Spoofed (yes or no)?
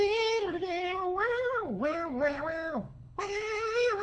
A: yes